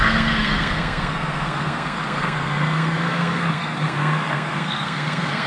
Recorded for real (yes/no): no